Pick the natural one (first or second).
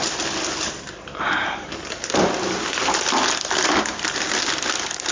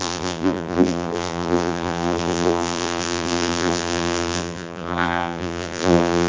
first